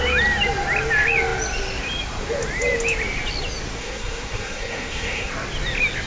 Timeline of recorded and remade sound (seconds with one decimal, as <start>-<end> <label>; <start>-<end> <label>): 0.0-3.8 recorded; 3.8-5.3 remade; 5.3-6.1 recorded